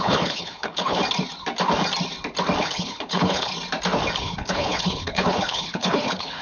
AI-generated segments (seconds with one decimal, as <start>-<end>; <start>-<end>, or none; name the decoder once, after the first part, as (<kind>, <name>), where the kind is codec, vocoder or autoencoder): 0.0-1.0 (codec, HILCodec); 2.6-3.5; 4.2-6.4